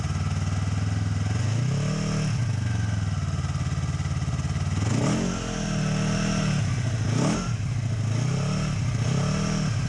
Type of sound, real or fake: real